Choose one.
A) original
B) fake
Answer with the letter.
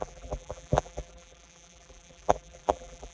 B